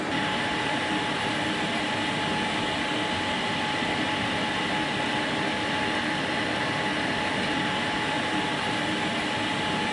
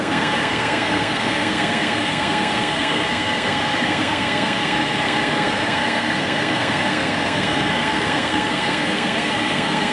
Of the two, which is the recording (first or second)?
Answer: first